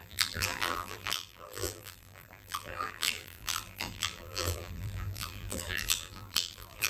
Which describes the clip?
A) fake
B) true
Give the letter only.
A